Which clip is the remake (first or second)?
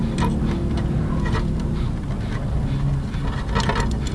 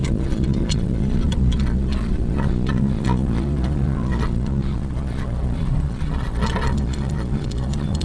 second